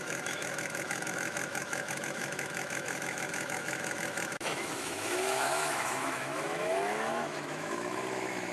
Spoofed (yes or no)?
yes